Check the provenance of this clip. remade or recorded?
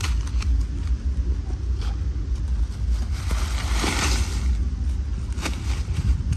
recorded